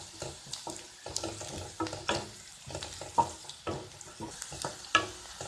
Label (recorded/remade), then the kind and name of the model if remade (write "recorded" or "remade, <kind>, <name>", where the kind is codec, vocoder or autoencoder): recorded